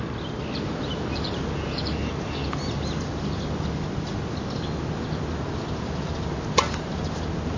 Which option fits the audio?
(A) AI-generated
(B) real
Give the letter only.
B